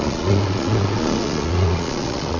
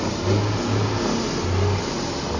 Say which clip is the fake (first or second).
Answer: first